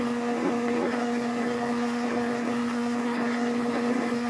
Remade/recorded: remade